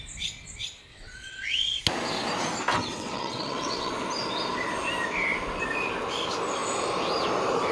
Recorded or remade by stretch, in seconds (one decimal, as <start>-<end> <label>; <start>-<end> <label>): 0.0-0.9 recorded; 0.9-1.8 remade; 1.8-2.9 recorded; 2.9-3.9 remade; 3.9-7.7 recorded